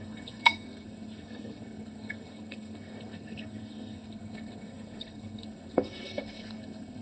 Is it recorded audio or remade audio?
remade